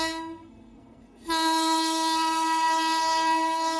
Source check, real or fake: fake